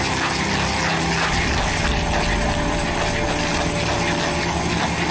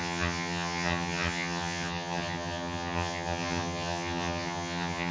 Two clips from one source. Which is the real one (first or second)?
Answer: first